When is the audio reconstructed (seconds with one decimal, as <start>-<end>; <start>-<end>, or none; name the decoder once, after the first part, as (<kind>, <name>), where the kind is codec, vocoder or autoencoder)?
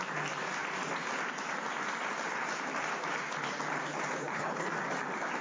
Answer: 4.2-4.7 (codec, HILCodec)